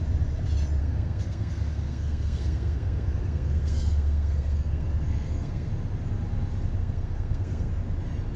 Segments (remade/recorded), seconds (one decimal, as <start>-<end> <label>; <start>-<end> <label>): 0.0-0.8 recorded; 0.8-5.7 remade; 5.7-6.8 recorded; 6.8-7.7 remade; 7.7-8.4 recorded

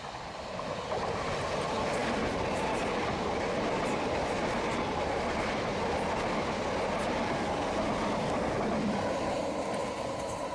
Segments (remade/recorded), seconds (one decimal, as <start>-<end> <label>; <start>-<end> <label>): 0.0-10.5 recorded

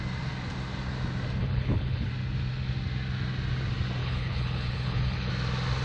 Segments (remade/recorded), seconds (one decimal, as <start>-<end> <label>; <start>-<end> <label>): 0.0-1.4 recorded; 1.4-2.1 remade; 2.1-4.0 recorded; 4.0-5.3 remade; 5.3-5.8 recorded

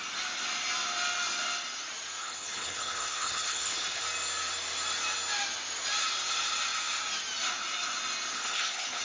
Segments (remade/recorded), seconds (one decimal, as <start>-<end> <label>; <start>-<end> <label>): 0.0-2.2 recorded; 2.2-4.0 remade; 4.0-8.3 recorded; 8.3-9.0 remade

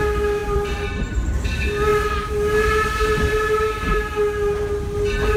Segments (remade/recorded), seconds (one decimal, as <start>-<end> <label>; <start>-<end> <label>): 0.0-0.4 recorded; 0.4-1.5 remade; 1.5-1.9 recorded; 1.9-4.7 remade; 4.7-5.4 recorded